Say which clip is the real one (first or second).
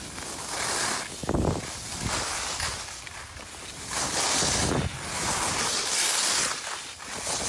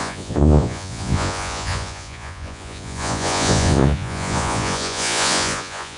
first